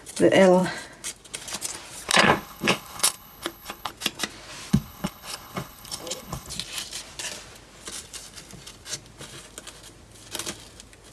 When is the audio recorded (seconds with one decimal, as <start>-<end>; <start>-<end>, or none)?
0.0-2.1; 3.9-4.7; 6.5-11.1